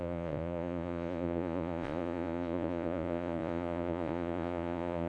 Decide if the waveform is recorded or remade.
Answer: remade